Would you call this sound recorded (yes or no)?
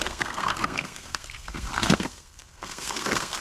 no